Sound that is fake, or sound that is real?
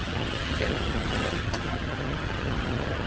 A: fake